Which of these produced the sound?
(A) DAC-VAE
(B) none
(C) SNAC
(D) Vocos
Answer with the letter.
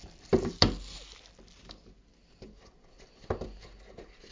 B